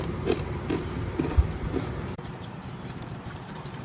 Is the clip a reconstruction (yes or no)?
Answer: yes